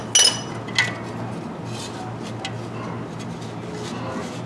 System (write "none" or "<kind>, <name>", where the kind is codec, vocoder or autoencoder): none